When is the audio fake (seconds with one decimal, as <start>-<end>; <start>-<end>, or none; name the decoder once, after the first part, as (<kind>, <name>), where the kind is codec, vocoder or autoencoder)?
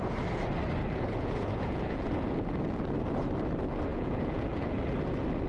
0.8-2.5 (vocoder, Vocos); 3.9-4.8